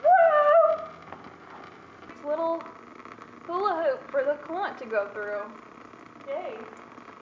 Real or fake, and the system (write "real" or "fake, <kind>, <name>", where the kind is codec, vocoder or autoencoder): real